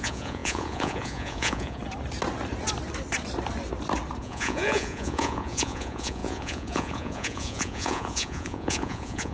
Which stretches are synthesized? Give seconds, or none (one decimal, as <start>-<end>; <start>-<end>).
0.0-1.8; 4.2-9.3